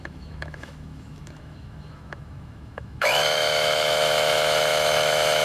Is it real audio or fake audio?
fake